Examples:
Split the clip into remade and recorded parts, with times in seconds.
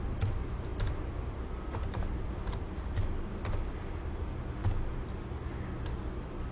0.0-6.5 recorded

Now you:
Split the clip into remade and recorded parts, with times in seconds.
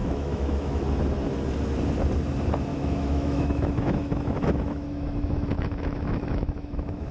0.0-0.8 remade; 0.8-2.7 recorded; 2.7-7.1 remade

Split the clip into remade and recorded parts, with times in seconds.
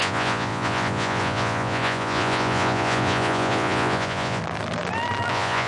0.0-4.4 remade; 4.4-5.3 recorded; 5.3-5.7 remade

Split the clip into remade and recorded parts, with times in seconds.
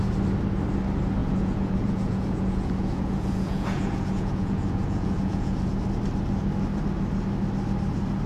0.0-1.2 recorded; 1.2-5.7 remade; 5.7-8.3 recorded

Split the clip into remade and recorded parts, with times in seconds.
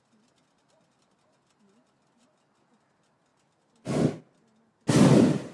0.0-5.5 recorded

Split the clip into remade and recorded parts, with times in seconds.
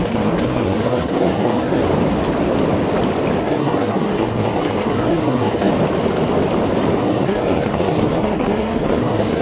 0.0-1.8 remade; 1.8-3.4 recorded; 3.4-5.7 remade; 5.7-7.0 recorded; 7.0-9.4 remade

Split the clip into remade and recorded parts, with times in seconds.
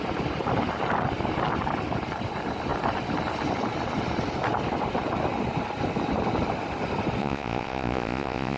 0.0-7.2 recorded; 7.2-8.6 remade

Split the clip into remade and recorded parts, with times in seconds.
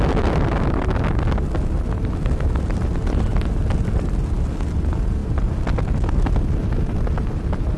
0.0-7.8 recorded